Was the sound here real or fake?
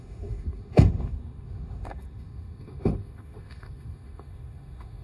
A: fake